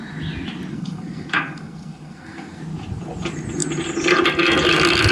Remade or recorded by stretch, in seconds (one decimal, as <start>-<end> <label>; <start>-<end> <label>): 0.0-0.7 recorded; 0.7-2.6 remade; 2.6-5.1 recorded